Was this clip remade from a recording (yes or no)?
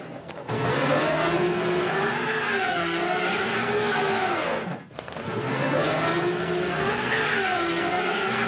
yes